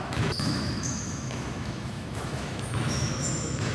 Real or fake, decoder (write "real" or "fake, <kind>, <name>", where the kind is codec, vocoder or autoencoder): fake, autoencoder, DAC-VAE